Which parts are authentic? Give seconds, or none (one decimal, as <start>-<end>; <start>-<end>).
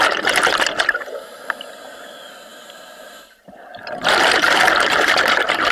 0.0-5.7